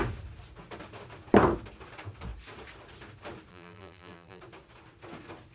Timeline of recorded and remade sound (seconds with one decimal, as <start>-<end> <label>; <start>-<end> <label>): 0.0-3.5 recorded; 3.5-4.4 remade; 4.4-5.5 recorded